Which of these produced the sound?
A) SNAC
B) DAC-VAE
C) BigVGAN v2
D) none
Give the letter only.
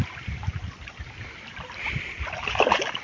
D